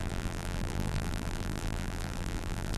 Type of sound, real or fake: fake